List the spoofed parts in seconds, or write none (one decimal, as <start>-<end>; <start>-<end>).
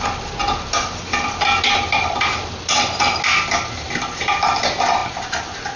none